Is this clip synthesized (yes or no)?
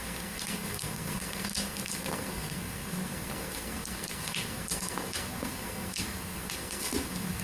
yes